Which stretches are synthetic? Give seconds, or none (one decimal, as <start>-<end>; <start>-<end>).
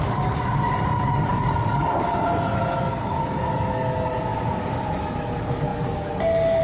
0.0-6.6